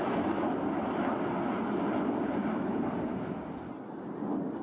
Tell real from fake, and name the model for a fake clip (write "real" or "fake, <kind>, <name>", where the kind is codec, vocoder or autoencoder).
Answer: real